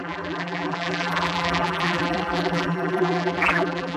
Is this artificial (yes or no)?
yes